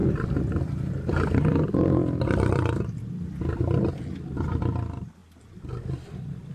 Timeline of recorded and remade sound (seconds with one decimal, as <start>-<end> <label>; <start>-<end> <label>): 0.0-3.6 remade; 3.6-5.2 recorded; 5.2-6.5 remade